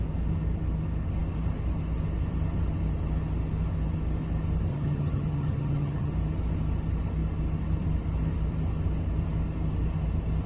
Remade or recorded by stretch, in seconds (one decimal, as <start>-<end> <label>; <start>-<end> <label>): 0.0-4.7 recorded; 4.7-6.1 remade; 6.1-10.5 recorded